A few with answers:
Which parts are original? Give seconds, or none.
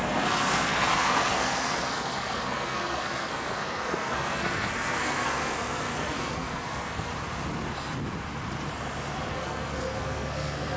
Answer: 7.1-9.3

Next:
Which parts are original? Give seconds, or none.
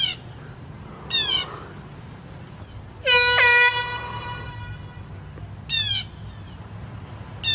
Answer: 0.0-7.5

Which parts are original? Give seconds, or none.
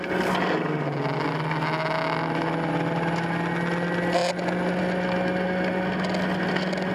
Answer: 0.0-6.9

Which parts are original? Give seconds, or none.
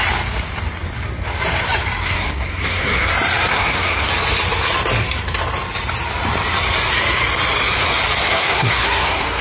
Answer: 0.0-2.0; 3.1-3.5; 4.1-8.3